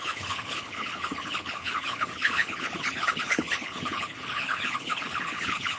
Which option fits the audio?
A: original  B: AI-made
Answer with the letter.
B